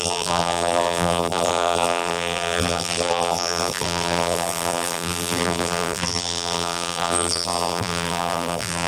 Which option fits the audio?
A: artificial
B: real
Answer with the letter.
A